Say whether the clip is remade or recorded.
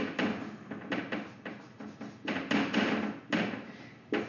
recorded